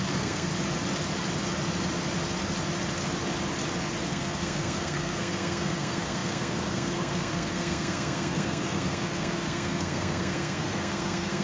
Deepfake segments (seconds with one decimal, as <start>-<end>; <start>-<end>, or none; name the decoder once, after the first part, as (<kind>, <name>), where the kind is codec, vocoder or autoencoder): 0.0-0.5 (codec, SNAC); 4.1-11.4

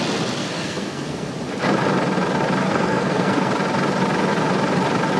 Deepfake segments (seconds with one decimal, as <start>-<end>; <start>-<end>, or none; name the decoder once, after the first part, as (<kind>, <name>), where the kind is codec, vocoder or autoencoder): 0.4-1.3 (codec, SNAC); 2.6-3.5

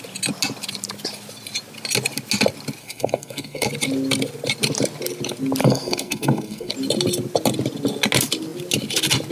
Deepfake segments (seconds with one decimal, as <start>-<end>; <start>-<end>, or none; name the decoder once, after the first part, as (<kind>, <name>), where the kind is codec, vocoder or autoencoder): 2.8-3.7 (codec, SNAC); 5.6-6.7

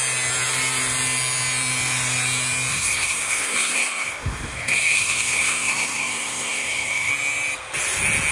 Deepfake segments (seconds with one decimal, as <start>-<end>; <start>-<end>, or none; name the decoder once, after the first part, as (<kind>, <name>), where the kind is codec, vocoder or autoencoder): 2.7-7.1 (codec, SNAC)

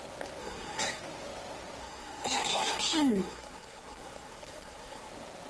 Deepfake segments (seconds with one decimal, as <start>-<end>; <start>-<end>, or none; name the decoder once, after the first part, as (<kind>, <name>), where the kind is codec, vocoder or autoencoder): 0.4-1.0 (codec, SNAC); 1.8-5.1

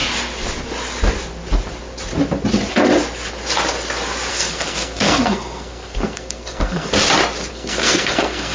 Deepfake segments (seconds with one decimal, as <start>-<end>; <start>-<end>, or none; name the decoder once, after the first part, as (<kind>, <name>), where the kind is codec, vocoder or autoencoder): 4.3-6.9 (codec, SNAC); 7.5-8.5

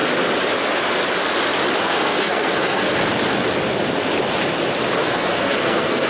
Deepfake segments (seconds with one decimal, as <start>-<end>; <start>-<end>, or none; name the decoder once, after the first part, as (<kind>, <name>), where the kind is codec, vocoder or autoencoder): 1.8-3.0 (codec, SNAC); 5.0-6.1

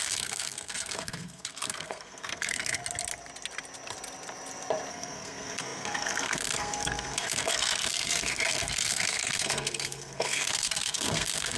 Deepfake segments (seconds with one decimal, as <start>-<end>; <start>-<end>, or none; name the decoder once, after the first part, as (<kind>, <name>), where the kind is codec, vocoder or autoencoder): 0.0-2.8 (codec, SNAC); 4.9-11.6